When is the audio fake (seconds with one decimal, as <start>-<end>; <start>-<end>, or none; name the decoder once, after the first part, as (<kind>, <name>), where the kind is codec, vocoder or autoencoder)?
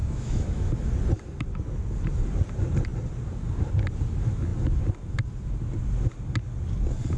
0.0-0.7 (autoencoder, DAC-VAE)